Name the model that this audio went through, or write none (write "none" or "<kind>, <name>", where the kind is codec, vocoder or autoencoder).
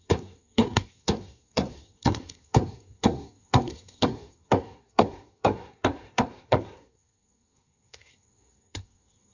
codec, SNAC